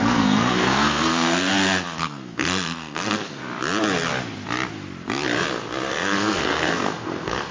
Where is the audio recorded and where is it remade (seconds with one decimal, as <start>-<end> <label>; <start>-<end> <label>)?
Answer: 0.0-1.5 remade; 1.5-2.0 recorded; 2.0-3.4 remade; 3.4-5.9 recorded; 5.9-7.5 remade